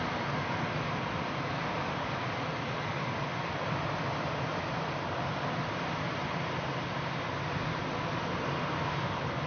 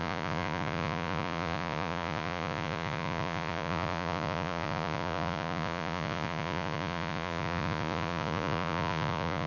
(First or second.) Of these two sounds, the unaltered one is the first